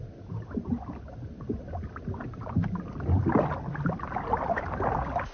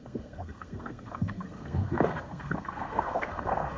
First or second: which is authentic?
first